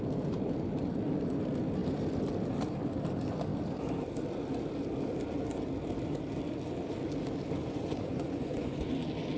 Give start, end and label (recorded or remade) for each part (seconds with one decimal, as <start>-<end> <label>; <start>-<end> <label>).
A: 0.0-7.6 recorded; 7.6-8.9 remade; 8.9-9.4 recorded

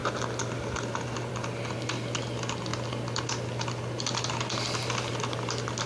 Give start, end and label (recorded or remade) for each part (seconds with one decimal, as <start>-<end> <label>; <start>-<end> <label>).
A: 0.0-5.9 recorded

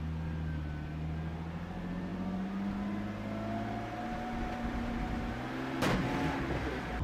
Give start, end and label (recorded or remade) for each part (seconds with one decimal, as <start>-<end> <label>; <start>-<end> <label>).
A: 0.0-7.0 recorded

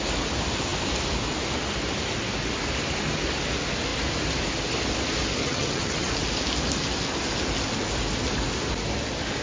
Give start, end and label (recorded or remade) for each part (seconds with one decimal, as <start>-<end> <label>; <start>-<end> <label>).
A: 0.0-5.4 recorded; 5.4-6.1 remade; 6.1-9.4 recorded

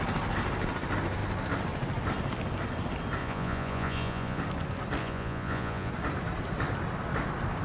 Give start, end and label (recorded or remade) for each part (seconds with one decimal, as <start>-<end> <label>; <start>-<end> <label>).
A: 0.0-3.2 recorded; 3.2-4.4 remade; 4.4-5.0 recorded; 5.0-5.9 remade; 5.9-7.6 recorded